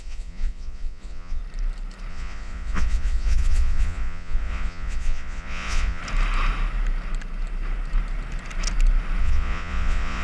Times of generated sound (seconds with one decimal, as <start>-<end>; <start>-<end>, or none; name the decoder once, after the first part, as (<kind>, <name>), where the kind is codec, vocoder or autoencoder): 0.0-1.4 (vocoder, Vocos); 2.1-6.0; 9.2-10.2